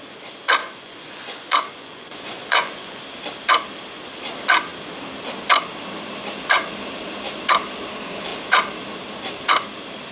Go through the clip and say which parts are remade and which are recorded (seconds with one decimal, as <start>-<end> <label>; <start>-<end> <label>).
0.0-0.6 recorded; 0.6-3.0 remade; 3.0-10.1 recorded